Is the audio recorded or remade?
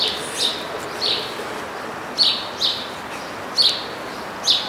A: recorded